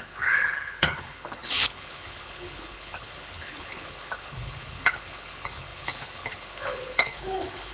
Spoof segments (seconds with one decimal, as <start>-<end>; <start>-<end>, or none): 0.0-7.7